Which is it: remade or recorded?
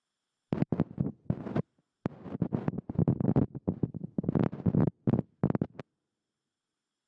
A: recorded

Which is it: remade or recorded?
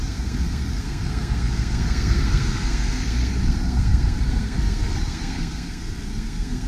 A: remade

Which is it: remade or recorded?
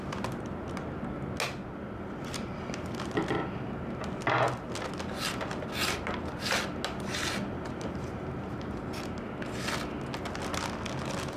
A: recorded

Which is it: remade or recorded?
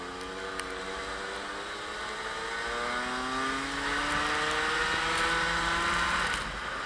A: recorded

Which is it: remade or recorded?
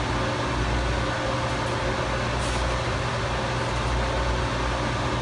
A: recorded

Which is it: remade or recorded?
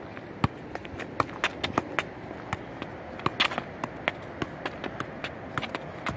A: recorded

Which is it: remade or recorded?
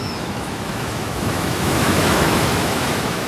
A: remade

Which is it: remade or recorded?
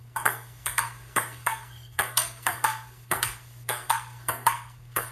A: remade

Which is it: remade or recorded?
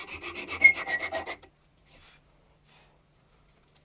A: recorded